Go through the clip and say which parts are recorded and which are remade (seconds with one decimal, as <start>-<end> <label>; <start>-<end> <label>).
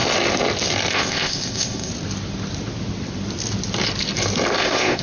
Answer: 0.0-0.9 recorded; 0.9-1.9 remade; 1.9-4.6 recorded; 4.6-5.0 remade